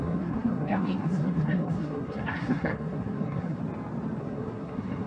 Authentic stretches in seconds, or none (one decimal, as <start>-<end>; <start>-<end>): 3.6-4.2